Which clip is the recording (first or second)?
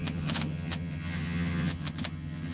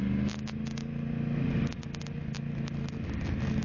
second